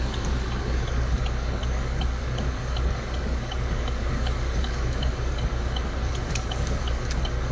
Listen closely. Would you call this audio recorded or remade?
remade